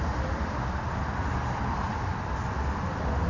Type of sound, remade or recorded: recorded